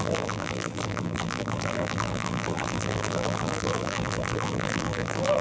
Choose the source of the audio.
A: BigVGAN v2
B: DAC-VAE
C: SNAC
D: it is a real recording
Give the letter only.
A